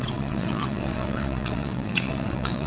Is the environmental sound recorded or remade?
remade